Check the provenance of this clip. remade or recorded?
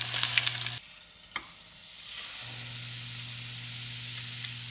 recorded